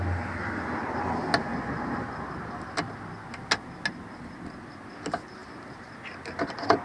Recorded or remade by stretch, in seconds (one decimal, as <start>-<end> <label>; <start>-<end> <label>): 0.0-5.4 recorded; 5.4-6.8 remade